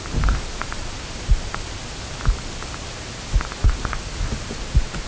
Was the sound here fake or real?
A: real